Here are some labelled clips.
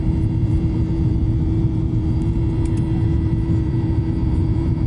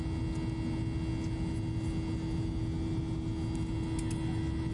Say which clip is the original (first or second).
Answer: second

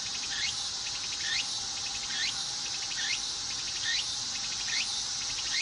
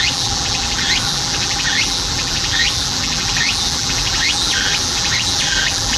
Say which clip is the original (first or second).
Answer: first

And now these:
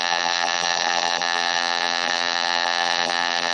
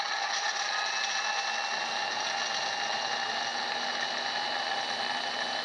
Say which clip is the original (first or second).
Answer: second